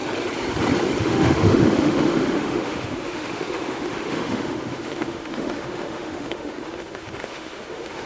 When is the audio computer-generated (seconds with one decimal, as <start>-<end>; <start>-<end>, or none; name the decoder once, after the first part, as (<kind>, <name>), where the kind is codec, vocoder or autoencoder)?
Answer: 1.0-8.1 (autoencoder, DAC-VAE)